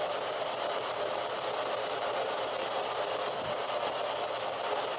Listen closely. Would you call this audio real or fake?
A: fake